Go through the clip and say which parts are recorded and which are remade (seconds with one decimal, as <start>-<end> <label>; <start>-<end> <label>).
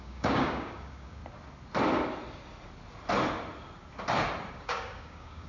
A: 0.0-1.2 remade; 1.2-4.5 recorded; 4.5-5.5 remade